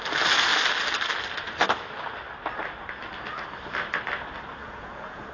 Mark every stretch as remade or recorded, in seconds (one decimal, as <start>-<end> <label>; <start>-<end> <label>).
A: 0.0-4.6 recorded; 4.6-5.3 remade